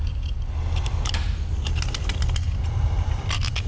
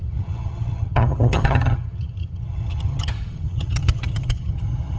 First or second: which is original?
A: first